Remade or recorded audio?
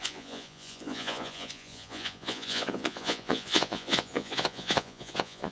remade